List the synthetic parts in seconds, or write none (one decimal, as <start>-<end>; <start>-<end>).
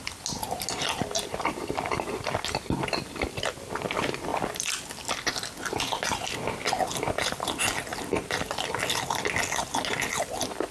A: 4.3-5.1